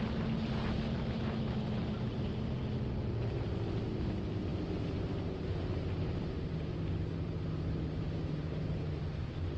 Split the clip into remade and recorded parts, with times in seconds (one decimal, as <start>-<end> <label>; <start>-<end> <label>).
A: 0.0-2.1 recorded; 2.1-2.6 remade; 2.6-4.5 recorded; 4.5-9.0 remade; 9.0-9.6 recorded